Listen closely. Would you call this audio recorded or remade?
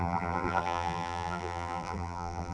remade